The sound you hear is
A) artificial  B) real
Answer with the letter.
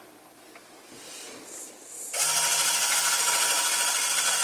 B